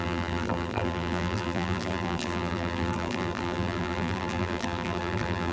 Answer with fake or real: fake